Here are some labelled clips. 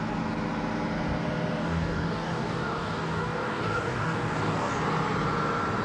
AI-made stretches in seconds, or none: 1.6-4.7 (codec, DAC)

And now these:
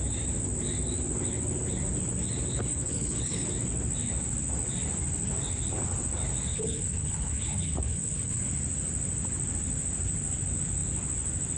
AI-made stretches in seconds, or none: 2.7-3.5 (codec, HILCodec); 6.5-8.5